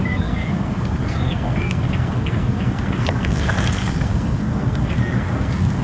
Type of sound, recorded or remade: remade